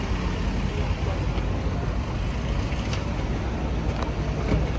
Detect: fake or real real